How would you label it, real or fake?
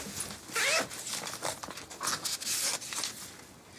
real